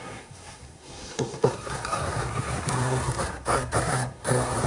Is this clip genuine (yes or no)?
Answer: no